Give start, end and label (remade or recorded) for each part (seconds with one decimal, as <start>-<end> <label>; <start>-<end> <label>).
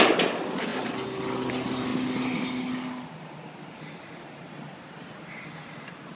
0.0-6.2 recorded